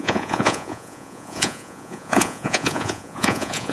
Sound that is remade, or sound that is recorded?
remade